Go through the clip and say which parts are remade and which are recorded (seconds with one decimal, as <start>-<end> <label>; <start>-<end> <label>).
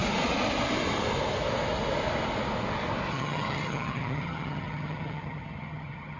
0.0-3.1 recorded; 3.1-6.2 remade